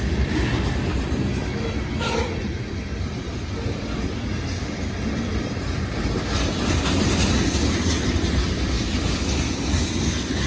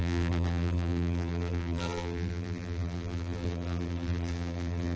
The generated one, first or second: second